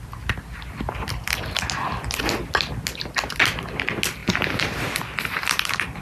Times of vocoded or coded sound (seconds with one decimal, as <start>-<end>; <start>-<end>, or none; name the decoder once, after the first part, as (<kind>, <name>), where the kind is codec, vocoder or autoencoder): 4.2-6.0 (vocoder, BigVGAN v2)